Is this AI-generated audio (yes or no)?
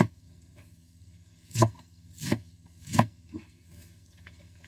yes